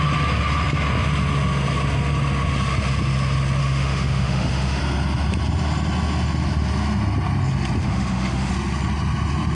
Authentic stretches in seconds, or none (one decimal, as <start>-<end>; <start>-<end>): 0.0-3.6; 4.8-7.8; 8.5-9.5